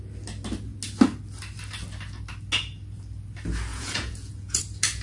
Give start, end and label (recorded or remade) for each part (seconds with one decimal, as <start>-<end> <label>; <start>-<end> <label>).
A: 0.0-3.7 recorded; 3.7-4.6 remade; 4.6-5.0 recorded